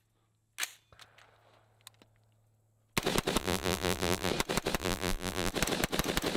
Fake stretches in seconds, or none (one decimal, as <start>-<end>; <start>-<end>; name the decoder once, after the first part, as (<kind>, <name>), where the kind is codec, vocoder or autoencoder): 3.4-4.3 (vocoder, BigVGAN v2); 4.8-5.5